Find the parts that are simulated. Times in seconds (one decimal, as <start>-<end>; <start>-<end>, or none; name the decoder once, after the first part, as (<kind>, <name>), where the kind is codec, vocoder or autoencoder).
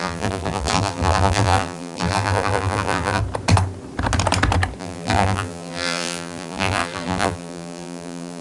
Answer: 0.0-3.2 (vocoder, BigVGAN v2); 4.8-8.4